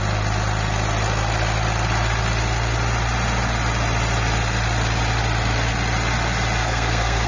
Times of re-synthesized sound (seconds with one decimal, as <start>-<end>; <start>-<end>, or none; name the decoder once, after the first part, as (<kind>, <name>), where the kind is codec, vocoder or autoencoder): 6.6-7.3 (codec, SNAC)